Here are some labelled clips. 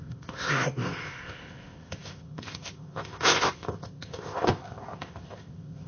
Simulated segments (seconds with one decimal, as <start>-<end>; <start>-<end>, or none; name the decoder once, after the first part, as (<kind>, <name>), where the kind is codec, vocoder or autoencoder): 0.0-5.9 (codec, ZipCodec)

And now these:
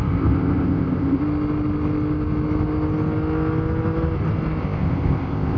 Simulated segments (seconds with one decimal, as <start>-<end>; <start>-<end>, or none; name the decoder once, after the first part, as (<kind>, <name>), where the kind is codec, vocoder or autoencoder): 0.0-1.2 (codec, ZipCodec); 4.6-5.6

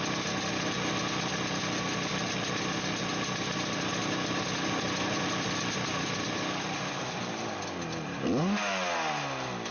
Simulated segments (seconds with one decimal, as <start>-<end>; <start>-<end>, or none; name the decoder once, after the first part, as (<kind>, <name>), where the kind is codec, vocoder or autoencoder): 3.6-7.2 (vocoder, BigVGAN v2)

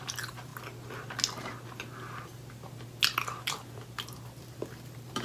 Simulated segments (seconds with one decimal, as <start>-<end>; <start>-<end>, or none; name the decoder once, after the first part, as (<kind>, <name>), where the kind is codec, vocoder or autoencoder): 0.0-0.5 (vocoder, BigVGAN v2); 3.5-5.2

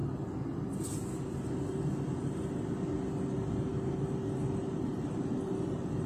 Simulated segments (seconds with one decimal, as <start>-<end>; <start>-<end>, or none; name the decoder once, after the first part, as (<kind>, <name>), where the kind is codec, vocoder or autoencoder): none